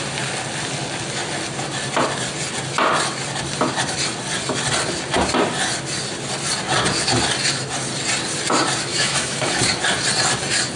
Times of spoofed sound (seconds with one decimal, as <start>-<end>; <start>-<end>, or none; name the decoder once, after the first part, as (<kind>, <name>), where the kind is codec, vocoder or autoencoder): 8.9-9.6 (autoencoder, DAC-VAE)